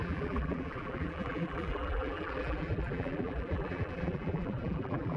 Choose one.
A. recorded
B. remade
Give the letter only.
B